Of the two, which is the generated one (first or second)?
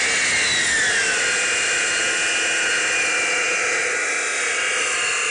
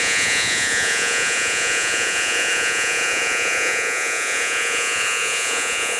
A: second